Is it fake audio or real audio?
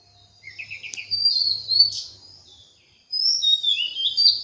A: real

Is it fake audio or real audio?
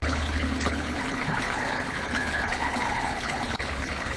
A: fake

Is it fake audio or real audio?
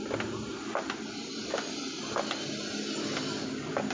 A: real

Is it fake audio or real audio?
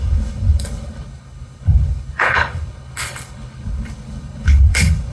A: fake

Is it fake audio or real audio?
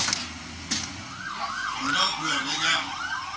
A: real